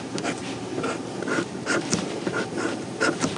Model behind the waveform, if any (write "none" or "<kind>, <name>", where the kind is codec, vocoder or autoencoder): vocoder, BigVGAN v2